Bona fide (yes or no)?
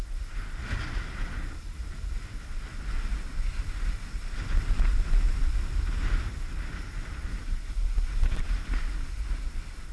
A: yes